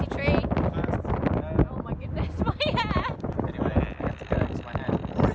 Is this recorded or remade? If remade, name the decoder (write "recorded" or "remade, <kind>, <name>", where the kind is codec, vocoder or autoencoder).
recorded